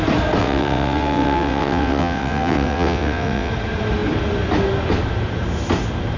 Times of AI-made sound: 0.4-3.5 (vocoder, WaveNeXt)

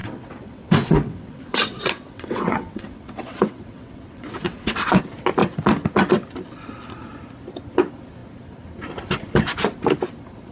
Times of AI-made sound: 0.0-5.0 (vocoder, WaveNeXt)

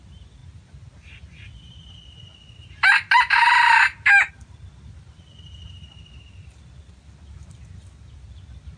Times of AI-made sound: none

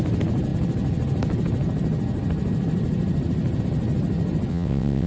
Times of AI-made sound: 4.5-5.1 (vocoder, WaveNeXt)

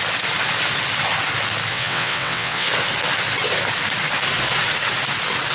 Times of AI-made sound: 1.7-2.7 (vocoder, WaveNeXt)

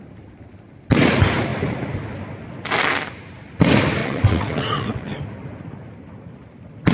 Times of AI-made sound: 4.0-5.2 (vocoder, WaveNeXt)

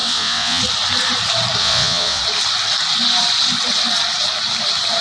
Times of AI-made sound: 0.0-0.6 (vocoder, WaveNeXt); 1.6-2.2

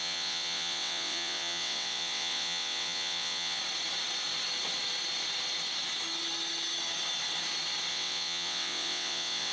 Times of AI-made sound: 0.0-3.6 (vocoder, WaveNeXt); 7.9-9.5